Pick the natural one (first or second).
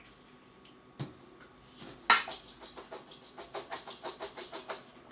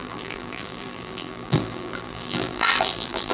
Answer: first